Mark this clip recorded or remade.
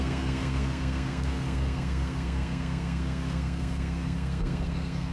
remade